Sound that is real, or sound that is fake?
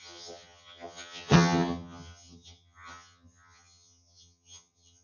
fake